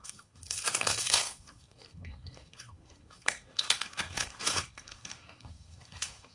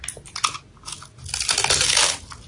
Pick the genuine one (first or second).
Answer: second